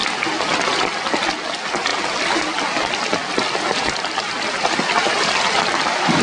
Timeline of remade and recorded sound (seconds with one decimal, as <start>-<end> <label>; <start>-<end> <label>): 0.0-6.2 recorded